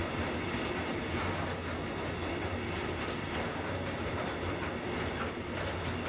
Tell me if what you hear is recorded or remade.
recorded